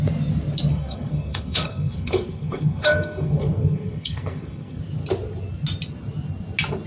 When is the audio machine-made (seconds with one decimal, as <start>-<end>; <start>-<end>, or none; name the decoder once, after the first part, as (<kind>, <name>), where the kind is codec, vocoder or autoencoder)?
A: 0.7-4.8 (codec, SNAC)